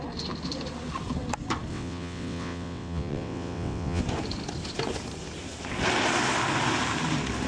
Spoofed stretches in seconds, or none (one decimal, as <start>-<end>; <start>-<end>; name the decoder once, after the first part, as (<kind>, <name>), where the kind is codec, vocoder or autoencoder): 1.7-4.0 (vocoder, WaveNeXt)